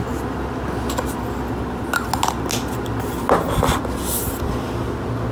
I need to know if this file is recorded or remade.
recorded